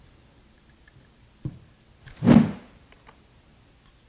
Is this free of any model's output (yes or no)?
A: yes